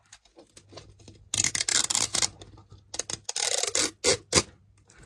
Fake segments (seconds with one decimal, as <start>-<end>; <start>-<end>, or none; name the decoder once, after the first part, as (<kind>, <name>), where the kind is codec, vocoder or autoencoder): none